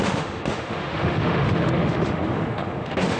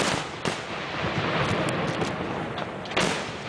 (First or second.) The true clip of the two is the second